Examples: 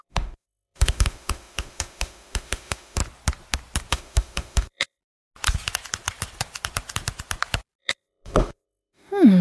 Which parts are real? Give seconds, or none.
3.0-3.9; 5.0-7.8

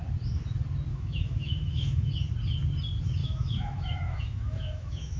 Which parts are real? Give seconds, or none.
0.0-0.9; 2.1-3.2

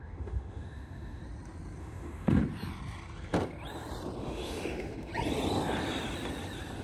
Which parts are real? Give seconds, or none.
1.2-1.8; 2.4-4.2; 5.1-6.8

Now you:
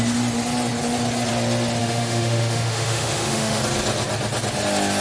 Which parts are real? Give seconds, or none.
0.0-1.8; 3.6-5.0